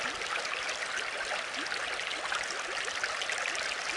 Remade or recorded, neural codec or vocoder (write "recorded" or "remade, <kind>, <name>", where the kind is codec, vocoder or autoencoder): recorded